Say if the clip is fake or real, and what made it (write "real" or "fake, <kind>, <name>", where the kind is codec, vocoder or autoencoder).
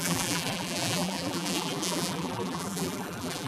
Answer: fake, vocoder, BigVGAN v2